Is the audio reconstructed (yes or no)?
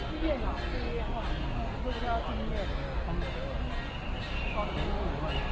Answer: no